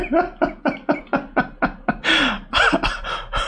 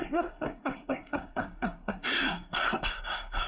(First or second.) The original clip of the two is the first